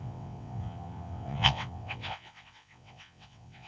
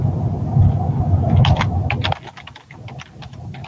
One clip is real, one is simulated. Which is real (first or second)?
second